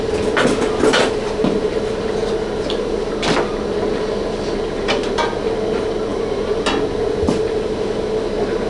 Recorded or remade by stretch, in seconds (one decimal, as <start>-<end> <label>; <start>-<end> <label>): 0.0-8.7 recorded